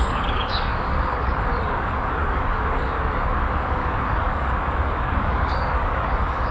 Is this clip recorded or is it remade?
remade